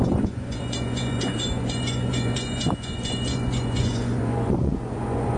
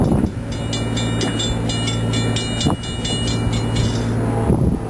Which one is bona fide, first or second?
second